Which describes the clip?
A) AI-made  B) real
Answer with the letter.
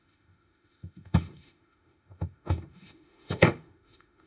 A